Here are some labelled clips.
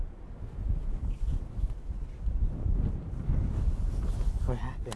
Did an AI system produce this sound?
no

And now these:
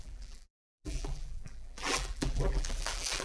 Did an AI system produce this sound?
yes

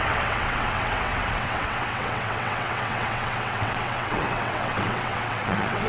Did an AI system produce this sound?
yes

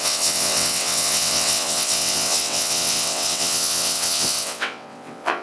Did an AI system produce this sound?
yes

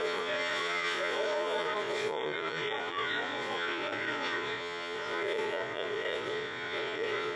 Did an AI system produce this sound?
yes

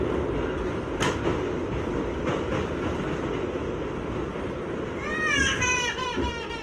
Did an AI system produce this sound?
no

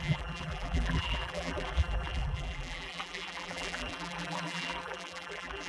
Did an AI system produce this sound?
yes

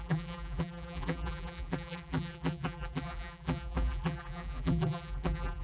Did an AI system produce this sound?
yes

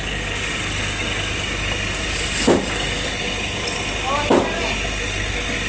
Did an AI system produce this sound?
no